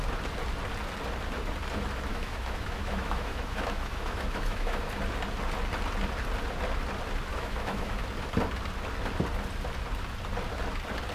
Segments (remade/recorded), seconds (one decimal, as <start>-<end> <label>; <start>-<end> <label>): 0.0-2.1 recorded; 2.1-4.9 remade; 4.9-7.3 recorded; 7.3-8.0 remade; 8.0-11.1 recorded